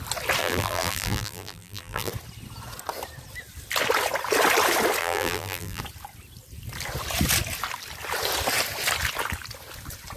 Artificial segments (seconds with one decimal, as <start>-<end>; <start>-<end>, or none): 0.4-2.1; 5.0-5.8